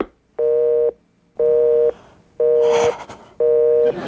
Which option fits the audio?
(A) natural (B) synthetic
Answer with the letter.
A